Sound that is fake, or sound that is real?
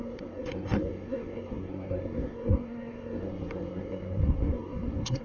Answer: fake